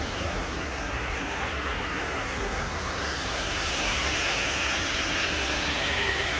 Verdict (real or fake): fake